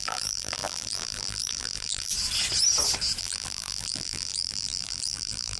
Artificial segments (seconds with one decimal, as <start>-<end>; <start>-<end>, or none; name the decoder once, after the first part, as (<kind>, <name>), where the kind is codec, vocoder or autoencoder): 0.0-2.1 (vocoder, BigVGAN v2); 3.2-5.6